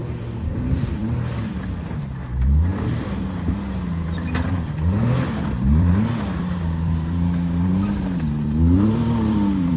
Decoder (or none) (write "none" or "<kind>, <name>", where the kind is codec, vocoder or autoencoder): vocoder, BigVGAN v2